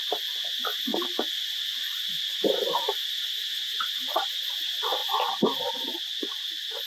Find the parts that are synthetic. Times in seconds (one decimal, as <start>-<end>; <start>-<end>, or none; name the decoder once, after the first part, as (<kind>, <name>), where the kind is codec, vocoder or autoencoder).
0.9-4.4 (vocoder, BigVGAN v2)